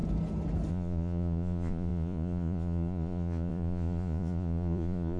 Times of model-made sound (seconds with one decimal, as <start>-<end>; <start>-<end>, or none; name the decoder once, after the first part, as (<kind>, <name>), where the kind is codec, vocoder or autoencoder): 0.7-5.2 (vocoder, Vocos)